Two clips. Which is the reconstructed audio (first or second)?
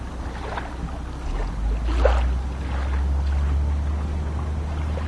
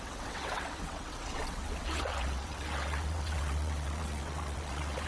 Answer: second